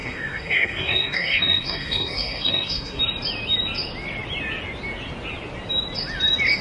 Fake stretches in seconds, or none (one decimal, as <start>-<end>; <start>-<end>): 0.0-3.0